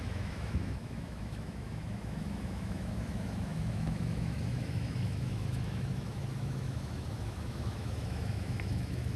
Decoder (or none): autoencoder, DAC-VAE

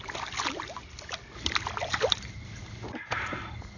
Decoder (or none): none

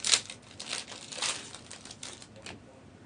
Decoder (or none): none